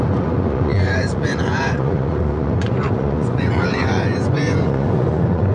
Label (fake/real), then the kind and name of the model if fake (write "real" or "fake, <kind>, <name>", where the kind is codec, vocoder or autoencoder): fake, vocoder, Vocos